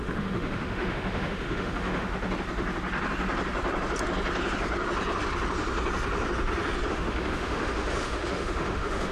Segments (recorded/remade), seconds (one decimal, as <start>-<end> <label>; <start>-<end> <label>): 0.0-2.1 remade; 2.1-6.9 recorded; 6.9-9.1 remade